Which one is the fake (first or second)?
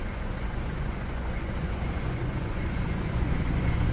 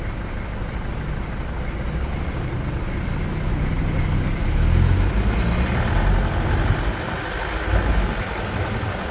first